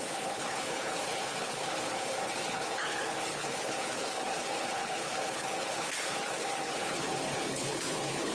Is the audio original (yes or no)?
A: no